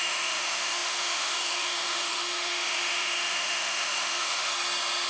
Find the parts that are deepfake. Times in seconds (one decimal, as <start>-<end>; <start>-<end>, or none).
0.0-4.5